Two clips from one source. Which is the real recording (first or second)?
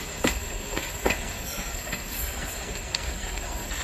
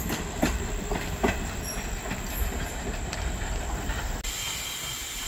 second